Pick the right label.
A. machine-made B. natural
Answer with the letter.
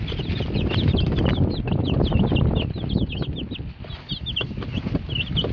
B